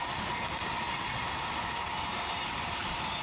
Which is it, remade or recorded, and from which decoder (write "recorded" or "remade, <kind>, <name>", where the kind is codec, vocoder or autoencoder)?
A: recorded